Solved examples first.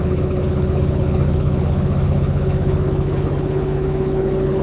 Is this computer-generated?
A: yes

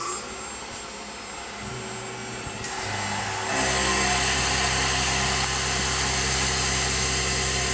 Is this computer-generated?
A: no